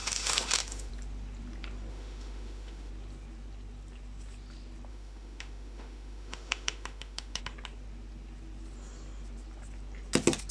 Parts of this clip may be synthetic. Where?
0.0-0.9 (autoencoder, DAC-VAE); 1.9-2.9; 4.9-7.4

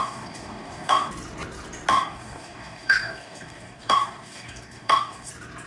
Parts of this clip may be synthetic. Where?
0.0-1.1 (codec, DAC); 1.9-5.3

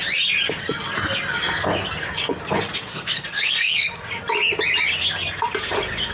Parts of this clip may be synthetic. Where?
2.9-4.1 (codec, SNAC)

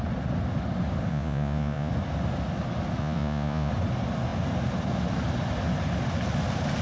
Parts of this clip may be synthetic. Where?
1.1-1.9 (vocoder, Vocos); 3.0-3.7

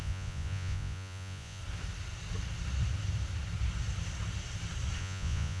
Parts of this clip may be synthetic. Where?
0.0-1.6 (vocoder, Vocos); 5.0-5.6

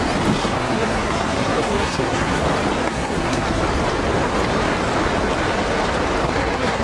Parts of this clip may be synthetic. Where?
0.4-2.4 (codec, SNAC); 2.8-3.6; 6.2-6.8